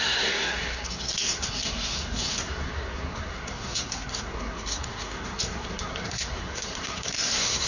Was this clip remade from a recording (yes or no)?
yes